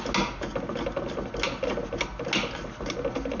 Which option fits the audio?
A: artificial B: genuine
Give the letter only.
B